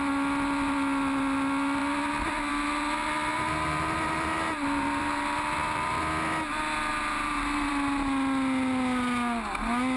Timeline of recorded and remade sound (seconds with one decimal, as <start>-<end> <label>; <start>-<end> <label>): 0.0-3.3 recorded; 3.3-6.0 remade; 6.0-6.9 recorded; 6.9-7.7 remade; 7.7-10.0 recorded